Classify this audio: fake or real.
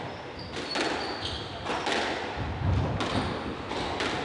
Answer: real